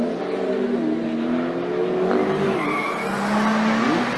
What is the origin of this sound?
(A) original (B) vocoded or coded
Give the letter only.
A